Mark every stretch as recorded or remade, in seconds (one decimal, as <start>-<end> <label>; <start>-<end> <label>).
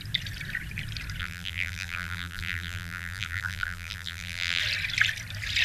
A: 0.0-1.2 recorded; 1.2-4.6 remade; 4.6-5.6 recorded